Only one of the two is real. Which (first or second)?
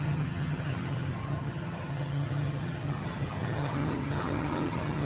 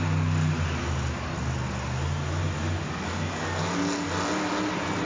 second